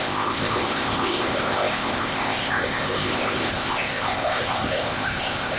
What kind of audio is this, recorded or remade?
remade